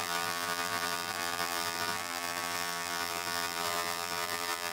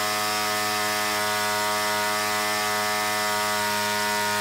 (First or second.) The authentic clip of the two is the second